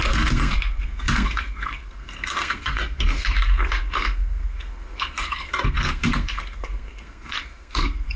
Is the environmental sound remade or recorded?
remade